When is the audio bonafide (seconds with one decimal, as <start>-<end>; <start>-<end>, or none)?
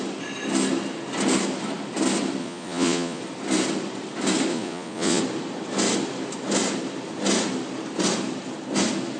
0.0-2.4; 3.2-4.5; 5.2-9.2